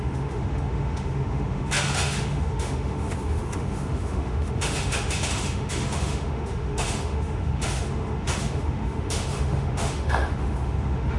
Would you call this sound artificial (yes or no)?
yes